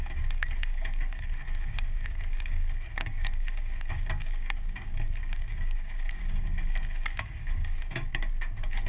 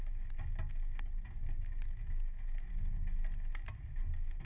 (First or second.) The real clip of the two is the second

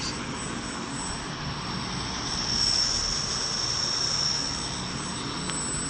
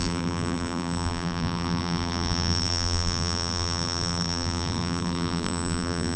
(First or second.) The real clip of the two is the first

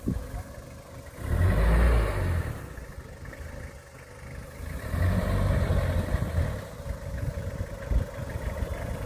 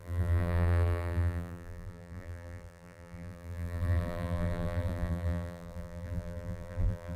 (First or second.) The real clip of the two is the first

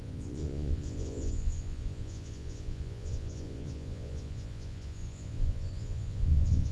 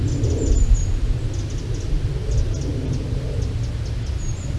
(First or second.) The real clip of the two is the second